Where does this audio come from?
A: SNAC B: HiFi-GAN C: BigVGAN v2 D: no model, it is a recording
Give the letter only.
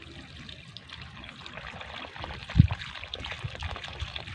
D